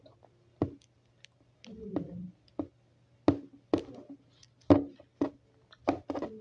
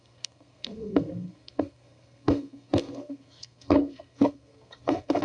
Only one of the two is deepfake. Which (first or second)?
second